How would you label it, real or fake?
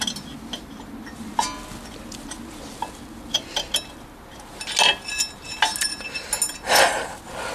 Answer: real